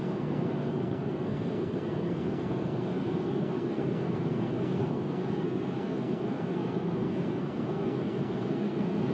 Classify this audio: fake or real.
fake